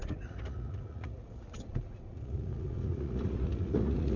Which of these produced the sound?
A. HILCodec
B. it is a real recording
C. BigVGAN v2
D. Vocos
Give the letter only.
D